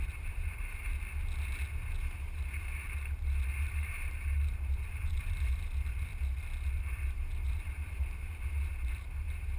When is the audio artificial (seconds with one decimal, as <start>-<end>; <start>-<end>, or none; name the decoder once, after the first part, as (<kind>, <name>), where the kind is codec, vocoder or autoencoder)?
0.0-0.9 (vocoder, BigVGAN v2); 2.0-6.1; 6.8-9.6

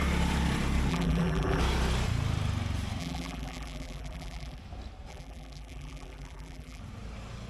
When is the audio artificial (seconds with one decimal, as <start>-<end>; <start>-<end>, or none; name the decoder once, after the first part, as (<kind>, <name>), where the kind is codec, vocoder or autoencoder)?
0.9-1.6 (vocoder, BigVGAN v2); 3.0-4.6; 5.1-6.8

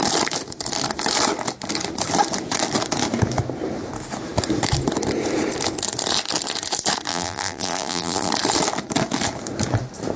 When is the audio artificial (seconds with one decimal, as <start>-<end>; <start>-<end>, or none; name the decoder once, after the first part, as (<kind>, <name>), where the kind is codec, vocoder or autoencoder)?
7.1-8.3 (vocoder, BigVGAN v2)

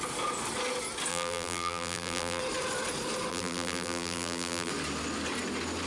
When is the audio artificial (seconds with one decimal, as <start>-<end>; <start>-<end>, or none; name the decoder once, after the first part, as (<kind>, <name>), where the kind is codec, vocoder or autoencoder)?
1.1-2.4 (vocoder, BigVGAN v2); 3.3-4.7

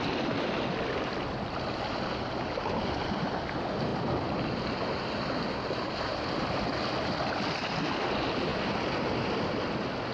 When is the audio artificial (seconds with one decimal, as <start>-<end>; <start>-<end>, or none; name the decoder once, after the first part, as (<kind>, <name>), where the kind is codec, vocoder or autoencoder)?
none

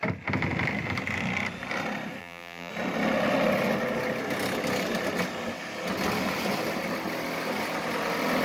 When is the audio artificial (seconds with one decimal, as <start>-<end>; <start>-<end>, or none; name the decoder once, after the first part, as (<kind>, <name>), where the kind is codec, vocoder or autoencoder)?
2.2-2.7 (vocoder, BigVGAN v2)

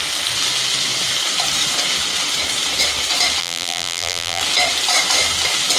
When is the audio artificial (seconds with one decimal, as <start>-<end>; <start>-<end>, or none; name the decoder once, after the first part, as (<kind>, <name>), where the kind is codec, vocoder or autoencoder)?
3.4-4.4 (vocoder, BigVGAN v2)

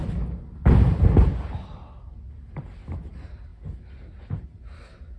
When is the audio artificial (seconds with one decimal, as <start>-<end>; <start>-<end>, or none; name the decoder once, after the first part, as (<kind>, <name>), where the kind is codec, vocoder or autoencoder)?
none